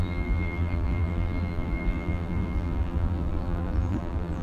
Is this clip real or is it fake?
fake